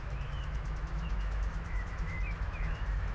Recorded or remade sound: remade